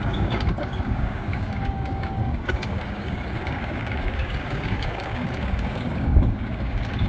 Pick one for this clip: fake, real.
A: fake